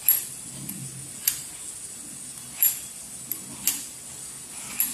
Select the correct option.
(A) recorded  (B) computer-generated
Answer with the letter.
A